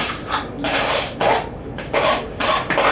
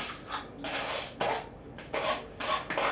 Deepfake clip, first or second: first